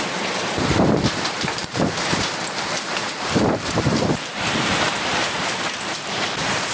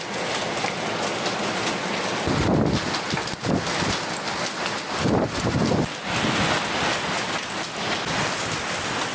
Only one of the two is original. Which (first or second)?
second